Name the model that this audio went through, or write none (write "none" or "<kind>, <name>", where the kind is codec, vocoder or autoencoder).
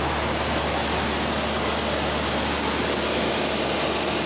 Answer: none